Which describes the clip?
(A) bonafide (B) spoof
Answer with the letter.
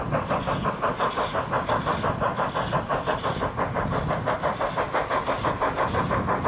A